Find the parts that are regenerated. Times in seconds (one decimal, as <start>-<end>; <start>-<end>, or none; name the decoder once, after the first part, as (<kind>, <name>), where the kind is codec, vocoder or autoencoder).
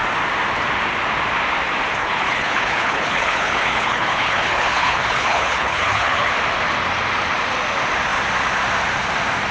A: 2.0-6.3 (codec, HILCodec)